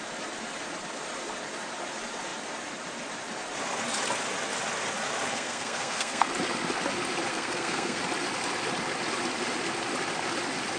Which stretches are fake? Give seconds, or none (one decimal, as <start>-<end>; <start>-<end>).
5.3-6.3; 7.3-8.0

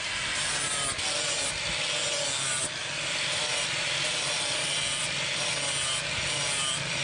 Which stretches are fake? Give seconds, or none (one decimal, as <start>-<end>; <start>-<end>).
2.8-4.8